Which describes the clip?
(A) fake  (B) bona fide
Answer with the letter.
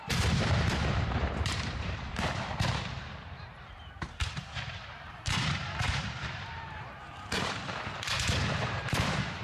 A